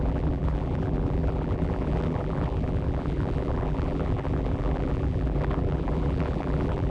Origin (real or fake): fake